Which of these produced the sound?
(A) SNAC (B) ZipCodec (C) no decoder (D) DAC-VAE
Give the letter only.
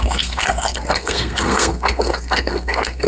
A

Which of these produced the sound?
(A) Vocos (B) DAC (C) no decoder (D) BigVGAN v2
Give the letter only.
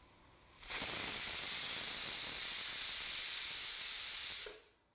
C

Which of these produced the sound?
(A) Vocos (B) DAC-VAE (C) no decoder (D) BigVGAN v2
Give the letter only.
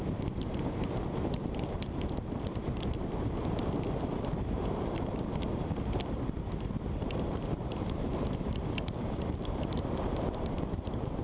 D